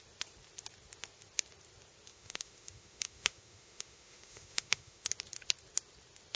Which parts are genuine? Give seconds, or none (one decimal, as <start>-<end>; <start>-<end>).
0.0-2.1; 5.1-6.3